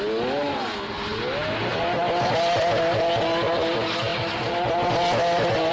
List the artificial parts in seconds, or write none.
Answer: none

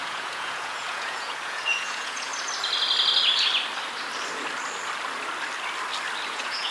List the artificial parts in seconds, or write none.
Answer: 0.0-2.3 (vocoder, Vocos); 6.3-6.7

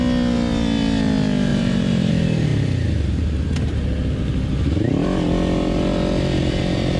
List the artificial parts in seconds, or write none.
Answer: 1.5-2.1 (vocoder, BigVGAN v2)

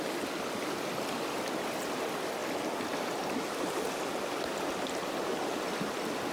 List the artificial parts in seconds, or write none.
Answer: none

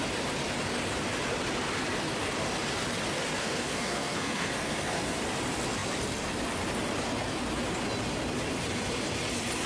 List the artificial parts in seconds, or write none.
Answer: 3.4-5.2 (codec, SNAC)

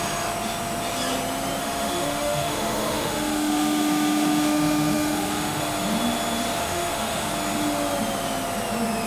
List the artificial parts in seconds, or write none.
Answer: 1.6-5.6 (autoencoder, DAC-VAE); 6.6-7.3

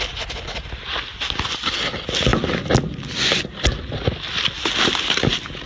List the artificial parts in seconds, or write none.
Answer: none

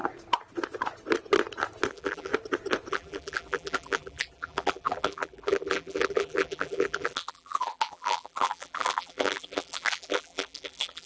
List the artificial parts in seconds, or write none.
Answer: 1.9-2.3 (vocoder, BigVGAN v2); 2.9-11.1